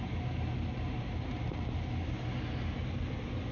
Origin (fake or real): real